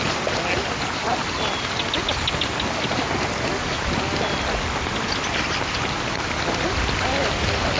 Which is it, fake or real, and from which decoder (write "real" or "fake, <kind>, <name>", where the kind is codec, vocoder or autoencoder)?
real